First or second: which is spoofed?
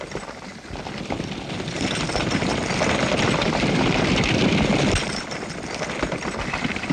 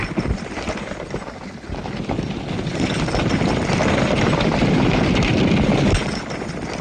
first